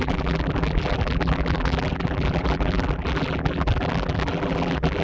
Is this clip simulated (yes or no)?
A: yes